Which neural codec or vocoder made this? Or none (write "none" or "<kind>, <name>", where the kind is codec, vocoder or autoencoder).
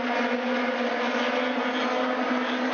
none